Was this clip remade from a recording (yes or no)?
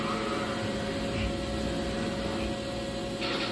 no